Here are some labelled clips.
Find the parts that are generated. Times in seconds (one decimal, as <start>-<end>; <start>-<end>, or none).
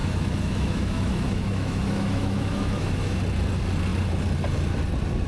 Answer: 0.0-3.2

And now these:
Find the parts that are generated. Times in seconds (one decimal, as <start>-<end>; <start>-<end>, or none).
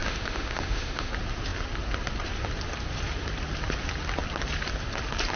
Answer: 0.0-1.1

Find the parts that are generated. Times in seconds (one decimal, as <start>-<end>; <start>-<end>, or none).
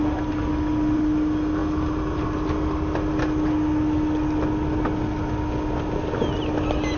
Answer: none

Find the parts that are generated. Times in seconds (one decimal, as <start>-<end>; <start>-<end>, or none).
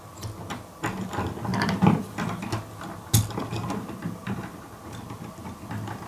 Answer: none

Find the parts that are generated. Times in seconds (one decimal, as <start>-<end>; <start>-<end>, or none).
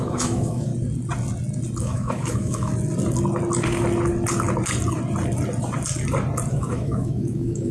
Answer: 0.0-0.7; 1.8-2.7; 6.5-7.7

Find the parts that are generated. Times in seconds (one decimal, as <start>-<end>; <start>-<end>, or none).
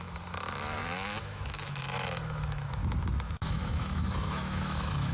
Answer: 0.0-2.8; 3.3-5.1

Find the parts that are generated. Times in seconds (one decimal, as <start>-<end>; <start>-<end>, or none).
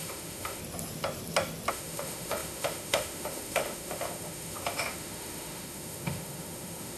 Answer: 0.0-0.6; 1.7-7.0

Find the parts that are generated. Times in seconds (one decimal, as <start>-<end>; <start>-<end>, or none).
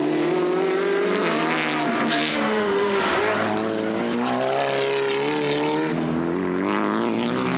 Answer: 2.3-3.2